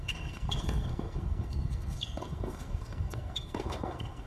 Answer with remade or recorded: remade